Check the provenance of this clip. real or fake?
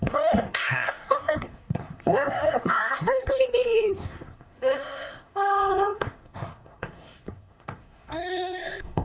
fake